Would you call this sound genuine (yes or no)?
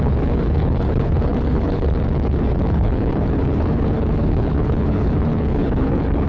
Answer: no